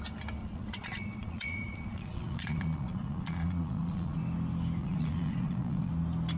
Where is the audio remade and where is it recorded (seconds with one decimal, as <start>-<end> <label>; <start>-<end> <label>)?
0.0-0.4 recorded; 0.4-4.2 remade; 4.2-4.8 recorded; 4.8-5.9 remade; 5.9-6.4 recorded